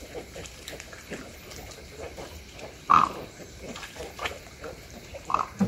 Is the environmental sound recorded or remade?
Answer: remade